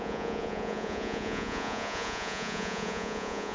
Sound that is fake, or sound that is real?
fake